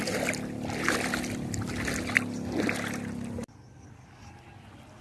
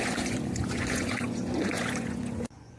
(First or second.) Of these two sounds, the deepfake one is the second